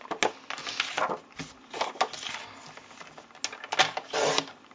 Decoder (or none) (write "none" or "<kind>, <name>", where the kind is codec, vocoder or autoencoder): none